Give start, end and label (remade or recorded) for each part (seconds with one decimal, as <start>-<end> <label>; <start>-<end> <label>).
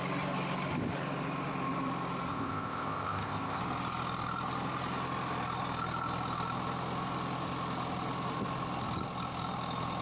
0.0-2.3 recorded; 2.3-3.6 remade; 3.6-10.0 recorded